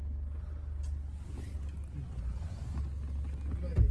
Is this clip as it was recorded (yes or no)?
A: yes